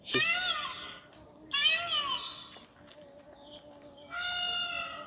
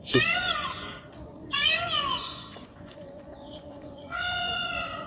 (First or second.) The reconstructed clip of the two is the second